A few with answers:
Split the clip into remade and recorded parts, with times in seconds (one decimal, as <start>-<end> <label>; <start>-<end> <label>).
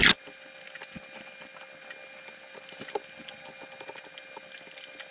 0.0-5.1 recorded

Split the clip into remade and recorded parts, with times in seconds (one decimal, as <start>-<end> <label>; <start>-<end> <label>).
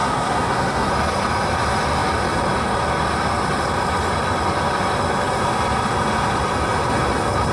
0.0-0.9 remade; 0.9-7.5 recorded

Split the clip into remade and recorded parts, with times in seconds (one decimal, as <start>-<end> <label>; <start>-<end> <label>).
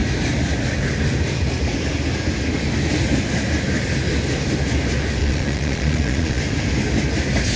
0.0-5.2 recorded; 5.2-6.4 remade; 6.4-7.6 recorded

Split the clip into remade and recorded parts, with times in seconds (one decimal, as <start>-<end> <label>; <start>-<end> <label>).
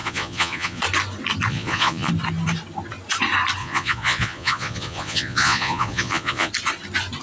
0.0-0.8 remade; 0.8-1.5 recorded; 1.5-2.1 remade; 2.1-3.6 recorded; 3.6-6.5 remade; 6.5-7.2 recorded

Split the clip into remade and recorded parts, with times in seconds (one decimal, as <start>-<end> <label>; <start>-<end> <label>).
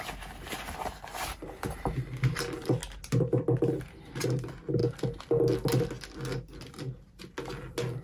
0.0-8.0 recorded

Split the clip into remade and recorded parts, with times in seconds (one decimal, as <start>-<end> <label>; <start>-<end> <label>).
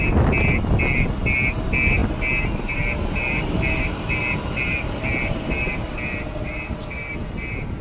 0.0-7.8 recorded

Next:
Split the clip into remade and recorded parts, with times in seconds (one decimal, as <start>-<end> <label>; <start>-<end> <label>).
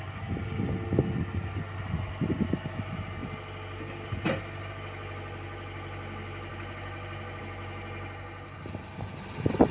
0.0-9.7 recorded